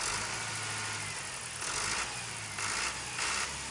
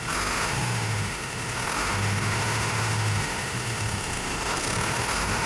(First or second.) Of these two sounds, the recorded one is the first